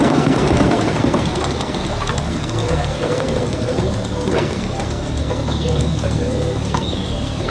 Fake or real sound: fake